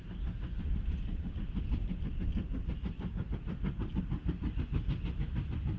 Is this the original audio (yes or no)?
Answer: yes